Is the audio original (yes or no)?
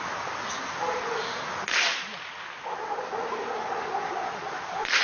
yes